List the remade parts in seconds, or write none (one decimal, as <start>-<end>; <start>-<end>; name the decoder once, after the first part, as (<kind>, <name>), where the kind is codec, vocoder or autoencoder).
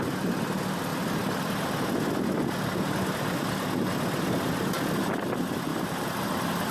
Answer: 5.7-6.2 (vocoder, BigVGAN v2)